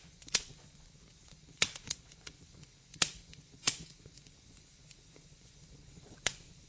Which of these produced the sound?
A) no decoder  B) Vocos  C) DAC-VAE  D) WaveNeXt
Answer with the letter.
B